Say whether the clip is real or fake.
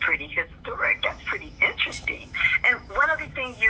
fake